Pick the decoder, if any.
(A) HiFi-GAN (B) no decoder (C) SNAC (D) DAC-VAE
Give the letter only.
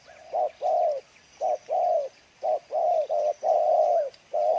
B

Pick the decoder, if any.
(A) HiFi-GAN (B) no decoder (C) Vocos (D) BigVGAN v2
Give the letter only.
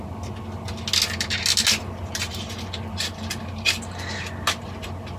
B